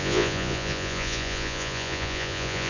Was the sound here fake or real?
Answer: fake